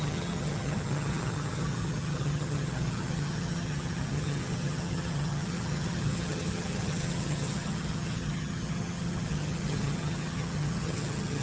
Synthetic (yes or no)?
yes